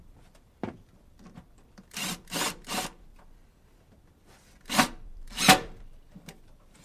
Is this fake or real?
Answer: fake